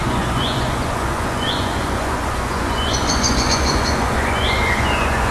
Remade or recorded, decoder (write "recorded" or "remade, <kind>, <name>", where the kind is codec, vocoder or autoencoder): remade, vocoder, Vocos